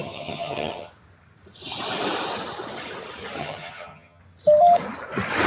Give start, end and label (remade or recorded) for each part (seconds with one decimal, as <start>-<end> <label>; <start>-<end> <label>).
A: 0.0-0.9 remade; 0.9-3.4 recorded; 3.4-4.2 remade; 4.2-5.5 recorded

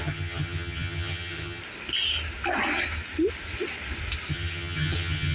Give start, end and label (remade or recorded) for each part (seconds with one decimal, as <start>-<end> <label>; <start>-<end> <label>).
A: 0.0-1.6 remade; 1.6-4.3 recorded; 4.3-5.3 remade

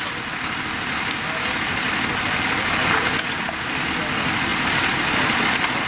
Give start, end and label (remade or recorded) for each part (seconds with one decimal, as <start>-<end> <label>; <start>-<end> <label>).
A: 0.0-5.9 recorded

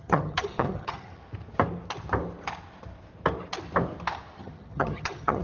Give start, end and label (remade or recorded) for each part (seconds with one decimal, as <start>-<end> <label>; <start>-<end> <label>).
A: 0.0-1.2 remade; 1.2-4.4 recorded; 4.4-5.4 remade

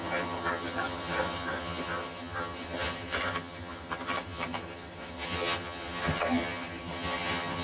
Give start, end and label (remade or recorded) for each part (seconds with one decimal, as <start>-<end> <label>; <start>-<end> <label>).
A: 0.0-7.6 remade